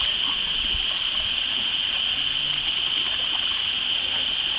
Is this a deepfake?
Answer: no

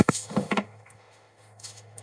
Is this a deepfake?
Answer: yes